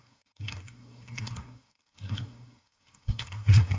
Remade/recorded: remade